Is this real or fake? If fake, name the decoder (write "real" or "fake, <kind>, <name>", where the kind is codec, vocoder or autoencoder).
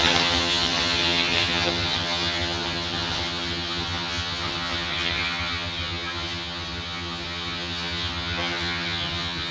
fake, vocoder, HiFi-GAN